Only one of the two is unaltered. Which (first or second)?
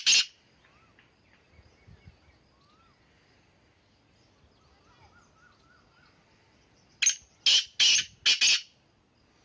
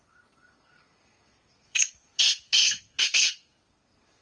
first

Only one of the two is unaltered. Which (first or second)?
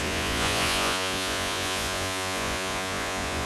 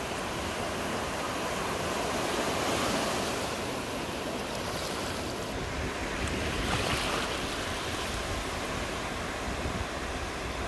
second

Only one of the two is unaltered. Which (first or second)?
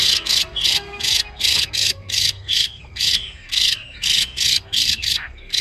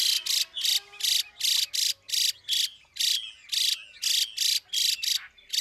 second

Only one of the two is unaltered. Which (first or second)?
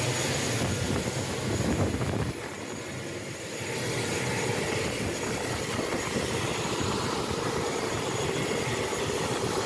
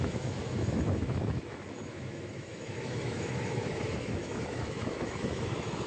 first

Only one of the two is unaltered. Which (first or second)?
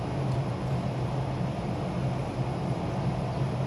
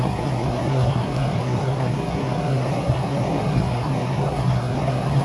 first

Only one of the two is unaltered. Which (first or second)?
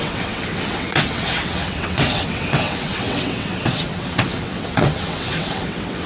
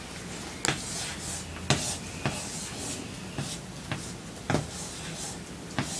second